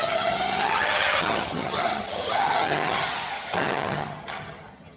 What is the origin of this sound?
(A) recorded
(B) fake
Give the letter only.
B